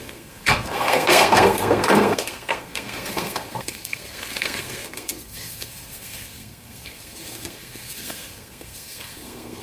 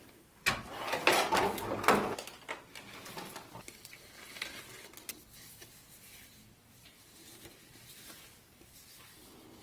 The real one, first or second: second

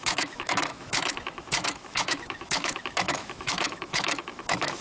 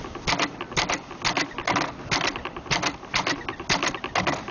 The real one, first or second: second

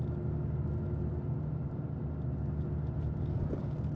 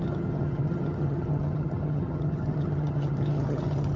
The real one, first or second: first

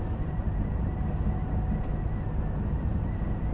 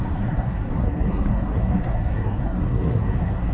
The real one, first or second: first